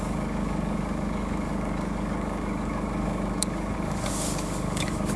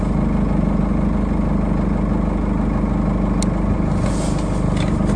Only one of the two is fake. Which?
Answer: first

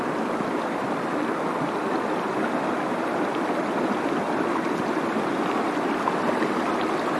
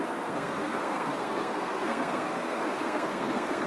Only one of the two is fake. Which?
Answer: second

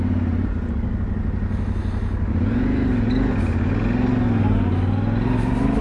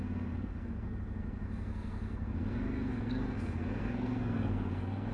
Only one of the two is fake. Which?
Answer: second